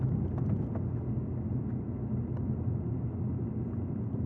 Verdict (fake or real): real